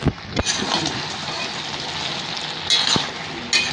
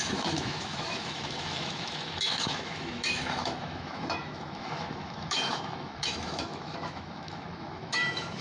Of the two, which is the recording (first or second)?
first